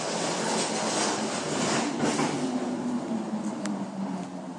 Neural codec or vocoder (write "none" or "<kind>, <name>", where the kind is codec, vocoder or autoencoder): none